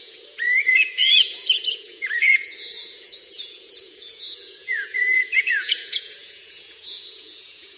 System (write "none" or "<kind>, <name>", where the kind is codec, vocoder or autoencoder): vocoder, Vocos